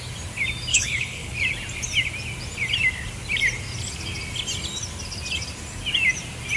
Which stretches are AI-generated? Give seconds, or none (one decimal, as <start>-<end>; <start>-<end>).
0.7-1.3